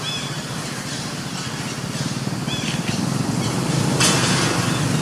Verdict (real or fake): real